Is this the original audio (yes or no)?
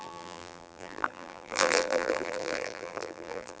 no